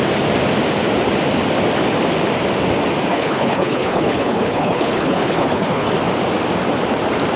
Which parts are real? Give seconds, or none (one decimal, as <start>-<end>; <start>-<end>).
0.0-3.1; 5.9-7.4